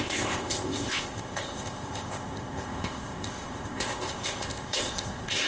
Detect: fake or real fake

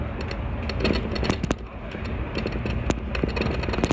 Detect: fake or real real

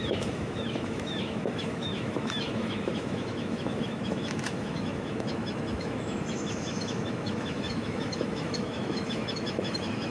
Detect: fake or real fake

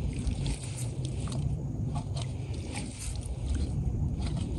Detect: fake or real fake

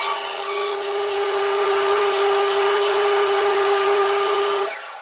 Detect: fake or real fake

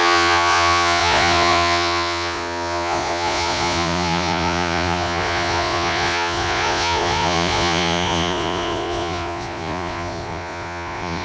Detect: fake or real fake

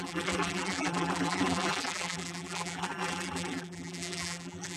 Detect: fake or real fake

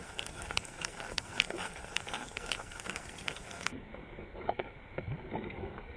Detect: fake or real fake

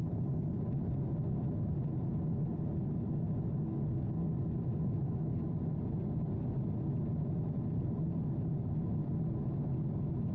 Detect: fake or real real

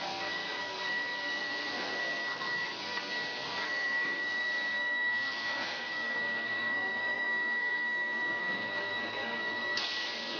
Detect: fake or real fake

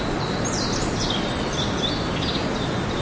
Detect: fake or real real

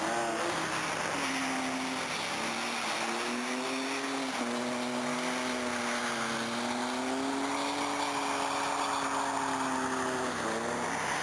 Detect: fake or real real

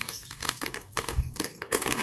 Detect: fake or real fake